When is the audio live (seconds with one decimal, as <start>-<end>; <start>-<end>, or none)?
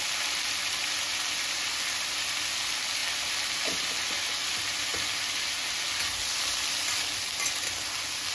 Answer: 0.0-8.3